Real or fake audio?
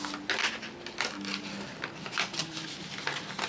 real